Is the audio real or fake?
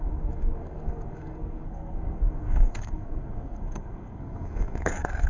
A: fake